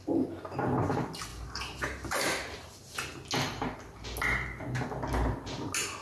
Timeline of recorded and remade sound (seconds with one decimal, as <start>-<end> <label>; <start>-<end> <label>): 0.0-1.3 recorded; 1.3-1.8 remade; 1.8-6.0 recorded